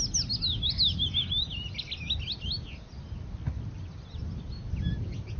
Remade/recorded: recorded